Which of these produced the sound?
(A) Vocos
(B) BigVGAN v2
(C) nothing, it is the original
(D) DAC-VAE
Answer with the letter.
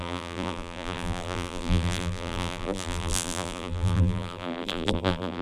B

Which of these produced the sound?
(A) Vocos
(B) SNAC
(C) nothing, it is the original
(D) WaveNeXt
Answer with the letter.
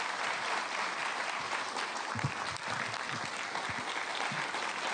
C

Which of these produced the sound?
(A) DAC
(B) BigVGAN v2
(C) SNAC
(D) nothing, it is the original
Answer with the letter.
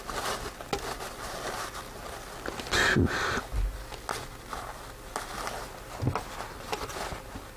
D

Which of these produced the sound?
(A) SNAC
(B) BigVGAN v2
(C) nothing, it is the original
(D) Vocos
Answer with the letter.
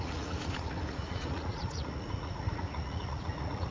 D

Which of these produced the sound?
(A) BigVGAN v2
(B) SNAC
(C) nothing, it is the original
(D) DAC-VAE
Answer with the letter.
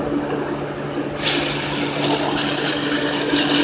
C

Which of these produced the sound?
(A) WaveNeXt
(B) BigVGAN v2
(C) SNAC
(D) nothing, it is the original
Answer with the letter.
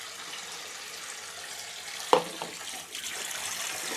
D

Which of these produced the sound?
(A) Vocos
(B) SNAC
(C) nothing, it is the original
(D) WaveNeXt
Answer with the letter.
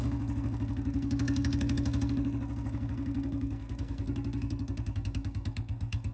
B